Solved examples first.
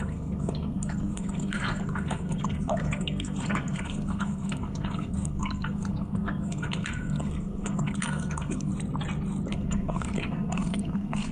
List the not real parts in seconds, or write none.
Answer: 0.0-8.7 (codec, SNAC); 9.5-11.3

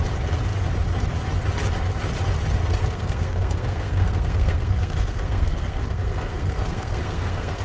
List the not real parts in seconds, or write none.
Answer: 2.6-7.6 (codec, SNAC)

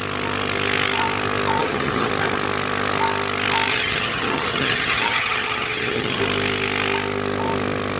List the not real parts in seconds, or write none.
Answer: 1.6-2.1 (vocoder, HiFi-GAN); 3.7-6.2

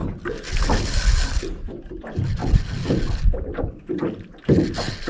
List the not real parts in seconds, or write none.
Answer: none

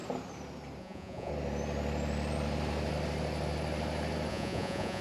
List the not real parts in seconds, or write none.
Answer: 0.8-1.3 (vocoder, Vocos); 4.3-5.0